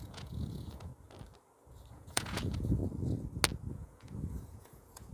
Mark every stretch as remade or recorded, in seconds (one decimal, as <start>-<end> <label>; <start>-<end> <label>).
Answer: 0.0-0.9 remade; 0.9-1.9 recorded; 1.9-2.8 remade; 2.8-3.7 recorded; 3.7-5.1 remade